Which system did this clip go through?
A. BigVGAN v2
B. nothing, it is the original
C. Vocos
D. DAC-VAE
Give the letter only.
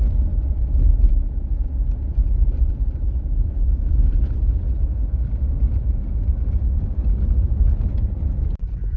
A